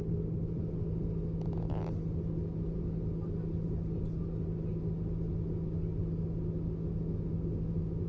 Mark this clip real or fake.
real